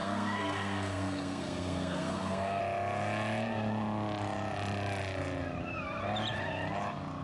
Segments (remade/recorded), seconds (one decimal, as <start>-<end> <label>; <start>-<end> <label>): 0.0-2.6 remade; 2.6-7.2 recorded